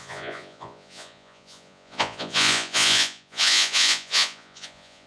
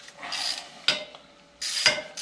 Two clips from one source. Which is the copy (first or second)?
first